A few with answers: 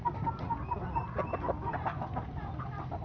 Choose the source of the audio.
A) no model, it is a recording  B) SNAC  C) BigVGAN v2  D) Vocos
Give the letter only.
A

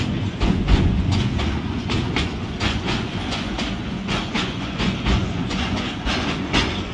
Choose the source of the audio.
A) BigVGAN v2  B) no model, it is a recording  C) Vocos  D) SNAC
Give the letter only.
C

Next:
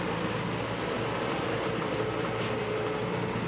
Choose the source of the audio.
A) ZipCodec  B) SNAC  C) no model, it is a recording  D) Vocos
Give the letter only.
C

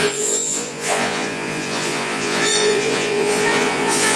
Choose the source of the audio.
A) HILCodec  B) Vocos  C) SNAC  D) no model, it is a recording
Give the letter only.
B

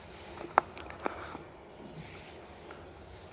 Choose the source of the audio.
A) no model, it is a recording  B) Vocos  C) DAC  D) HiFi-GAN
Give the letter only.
A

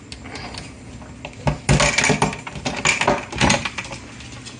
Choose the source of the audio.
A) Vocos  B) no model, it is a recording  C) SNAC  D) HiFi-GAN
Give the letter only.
B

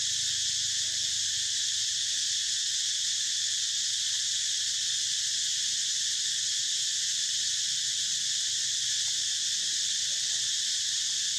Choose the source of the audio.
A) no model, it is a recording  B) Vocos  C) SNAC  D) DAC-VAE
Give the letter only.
A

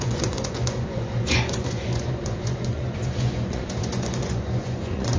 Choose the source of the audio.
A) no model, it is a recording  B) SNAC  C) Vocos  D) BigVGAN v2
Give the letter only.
C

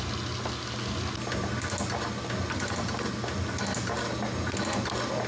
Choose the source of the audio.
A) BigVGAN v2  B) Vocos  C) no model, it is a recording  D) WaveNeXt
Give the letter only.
C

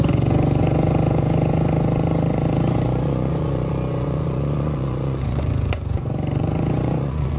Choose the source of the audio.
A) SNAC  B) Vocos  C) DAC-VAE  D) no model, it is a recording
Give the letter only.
B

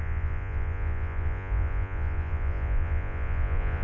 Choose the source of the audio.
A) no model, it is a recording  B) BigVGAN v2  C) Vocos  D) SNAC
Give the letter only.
C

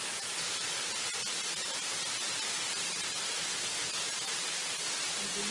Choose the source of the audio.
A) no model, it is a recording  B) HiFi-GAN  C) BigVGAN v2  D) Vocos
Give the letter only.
A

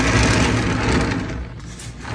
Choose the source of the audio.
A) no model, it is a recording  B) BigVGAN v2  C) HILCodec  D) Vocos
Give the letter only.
A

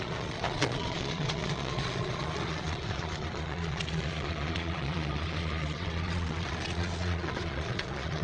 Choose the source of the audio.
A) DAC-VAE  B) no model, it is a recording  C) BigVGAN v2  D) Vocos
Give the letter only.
D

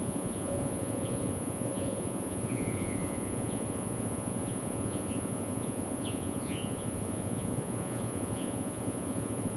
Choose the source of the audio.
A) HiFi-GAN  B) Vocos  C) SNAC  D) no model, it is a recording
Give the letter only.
B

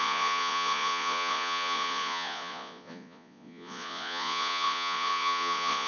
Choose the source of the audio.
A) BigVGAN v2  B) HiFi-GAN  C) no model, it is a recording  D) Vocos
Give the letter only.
D